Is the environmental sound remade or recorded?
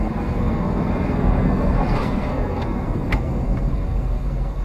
remade